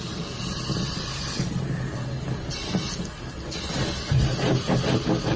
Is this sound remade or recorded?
recorded